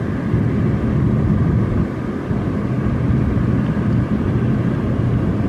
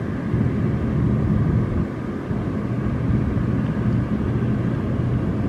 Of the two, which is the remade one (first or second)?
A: first